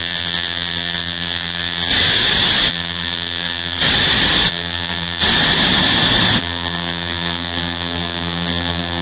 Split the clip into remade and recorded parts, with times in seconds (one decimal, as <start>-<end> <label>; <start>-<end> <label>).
0.0-1.9 remade; 1.9-2.7 recorded; 2.7-3.8 remade; 3.8-4.5 recorded; 4.5-5.2 remade; 5.2-6.4 recorded; 6.4-9.0 remade